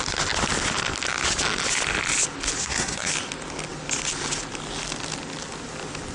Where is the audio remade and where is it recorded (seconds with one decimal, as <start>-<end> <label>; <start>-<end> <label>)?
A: 0.0-2.6 recorded; 2.6-3.1 remade; 3.1-6.1 recorded